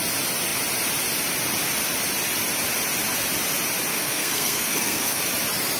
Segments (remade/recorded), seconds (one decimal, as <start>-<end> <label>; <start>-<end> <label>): 0.0-3.9 recorded; 3.9-5.2 remade; 5.2-5.8 recorded